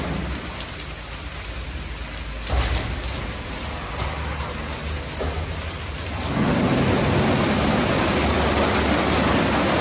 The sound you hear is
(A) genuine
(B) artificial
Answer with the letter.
A